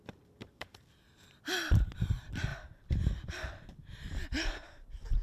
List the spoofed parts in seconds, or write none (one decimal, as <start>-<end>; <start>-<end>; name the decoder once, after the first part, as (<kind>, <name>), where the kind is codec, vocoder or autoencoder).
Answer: none